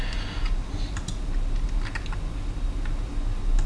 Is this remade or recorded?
recorded